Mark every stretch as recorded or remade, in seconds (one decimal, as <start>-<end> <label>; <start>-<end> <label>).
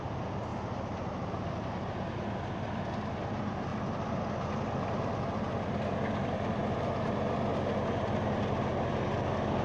0.0-9.6 recorded